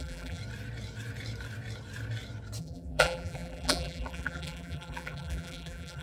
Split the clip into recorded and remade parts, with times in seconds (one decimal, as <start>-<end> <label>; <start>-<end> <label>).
0.0-0.4 remade; 0.4-2.6 recorded; 2.6-6.0 remade